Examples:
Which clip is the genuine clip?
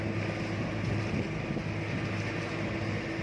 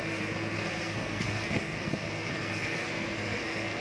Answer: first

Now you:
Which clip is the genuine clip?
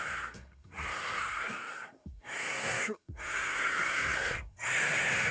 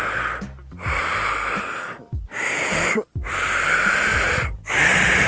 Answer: second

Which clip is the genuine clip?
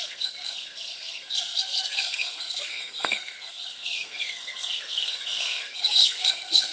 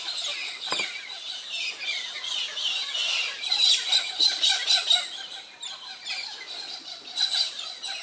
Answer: second